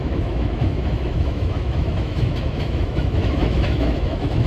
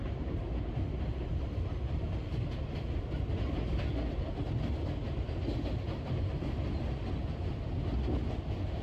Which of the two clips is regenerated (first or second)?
first